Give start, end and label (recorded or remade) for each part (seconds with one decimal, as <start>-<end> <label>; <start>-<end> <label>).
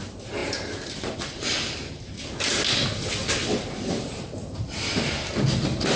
0.0-1.8 remade; 1.8-5.4 recorded; 5.4-6.0 remade